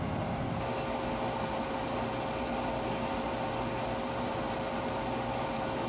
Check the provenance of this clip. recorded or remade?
remade